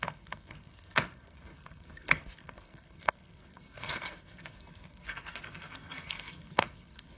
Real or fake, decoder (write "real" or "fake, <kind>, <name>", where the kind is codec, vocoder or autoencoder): fake, codec, SNAC